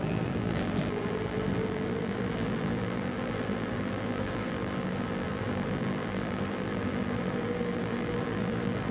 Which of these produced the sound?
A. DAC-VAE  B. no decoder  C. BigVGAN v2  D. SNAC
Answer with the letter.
C